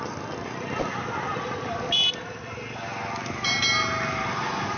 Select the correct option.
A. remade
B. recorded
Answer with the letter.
B